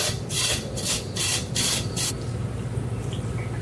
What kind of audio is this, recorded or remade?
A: recorded